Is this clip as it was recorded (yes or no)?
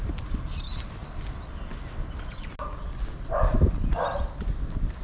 yes